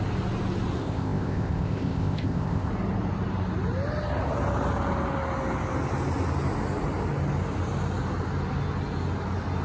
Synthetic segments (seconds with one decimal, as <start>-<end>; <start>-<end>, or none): 0.8-2.7